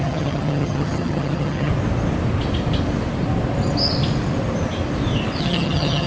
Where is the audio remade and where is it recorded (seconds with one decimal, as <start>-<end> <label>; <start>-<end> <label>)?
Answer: 0.0-1.7 remade; 1.7-5.4 recorded; 5.4-6.1 remade